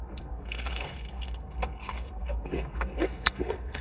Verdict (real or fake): fake